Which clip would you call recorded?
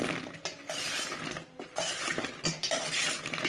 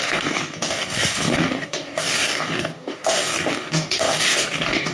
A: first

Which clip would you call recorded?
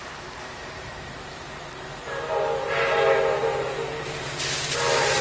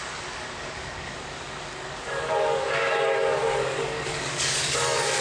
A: first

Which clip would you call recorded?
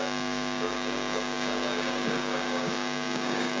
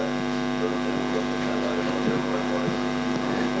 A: second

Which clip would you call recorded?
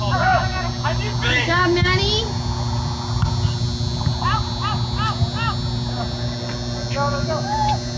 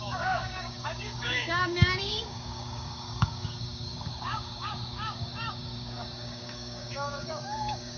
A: first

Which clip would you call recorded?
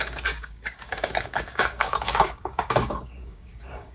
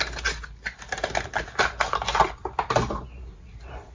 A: second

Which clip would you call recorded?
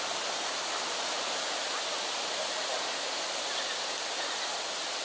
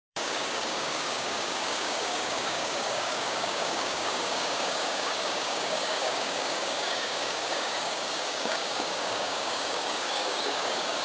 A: first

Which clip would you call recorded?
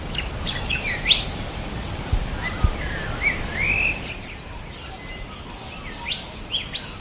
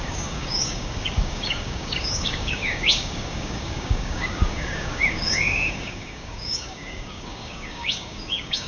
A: first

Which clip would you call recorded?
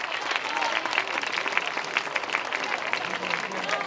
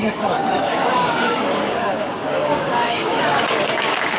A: first